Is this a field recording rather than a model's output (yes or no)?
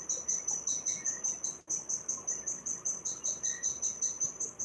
yes